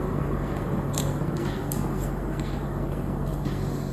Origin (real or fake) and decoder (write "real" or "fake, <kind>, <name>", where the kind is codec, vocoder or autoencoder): fake, codec, SNAC